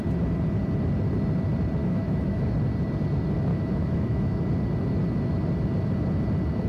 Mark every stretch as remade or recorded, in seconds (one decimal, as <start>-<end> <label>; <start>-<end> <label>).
0.0-1.8 recorded; 1.8-2.5 remade; 2.5-3.5 recorded; 3.5-4.5 remade; 4.5-6.7 recorded